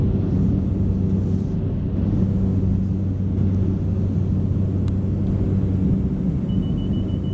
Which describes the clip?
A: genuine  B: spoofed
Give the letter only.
A